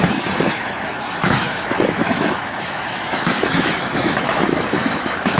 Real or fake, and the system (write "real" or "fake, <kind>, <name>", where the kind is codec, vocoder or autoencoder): fake, autoencoder, DAC-VAE